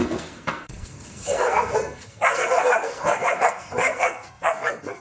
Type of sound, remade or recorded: remade